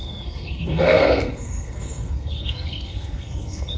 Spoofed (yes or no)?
yes